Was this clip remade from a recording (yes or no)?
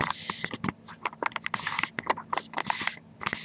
no